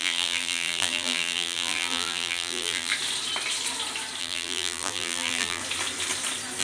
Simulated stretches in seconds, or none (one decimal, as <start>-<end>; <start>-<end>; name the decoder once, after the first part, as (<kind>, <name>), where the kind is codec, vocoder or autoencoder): 0.0-2.9 (vocoder, BigVGAN v2); 4.2-5.6